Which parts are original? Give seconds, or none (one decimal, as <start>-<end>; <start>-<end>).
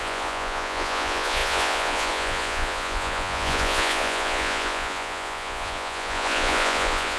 none